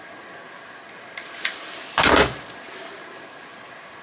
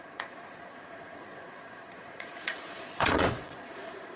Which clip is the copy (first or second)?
second